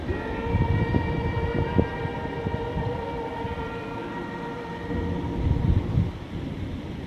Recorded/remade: recorded